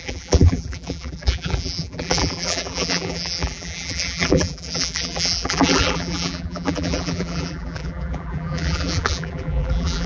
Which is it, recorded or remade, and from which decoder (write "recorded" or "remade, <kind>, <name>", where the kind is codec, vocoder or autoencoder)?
remade, vocoder, BigVGAN v2